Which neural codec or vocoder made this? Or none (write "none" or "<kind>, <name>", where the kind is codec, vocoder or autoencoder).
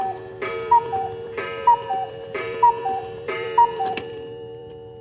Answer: vocoder, BigVGAN v2